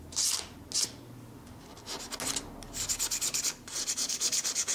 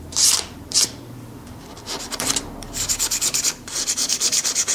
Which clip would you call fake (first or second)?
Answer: second